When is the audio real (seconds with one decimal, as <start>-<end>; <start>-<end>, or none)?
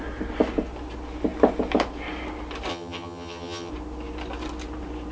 0.0-2.7; 3.7-5.1